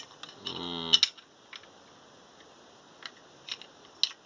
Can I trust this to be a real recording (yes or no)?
yes